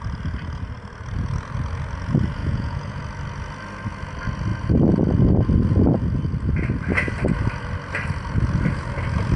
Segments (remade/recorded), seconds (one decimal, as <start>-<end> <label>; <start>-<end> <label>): 0.0-2.4 recorded; 2.4-3.0 remade; 3.0-9.4 recorded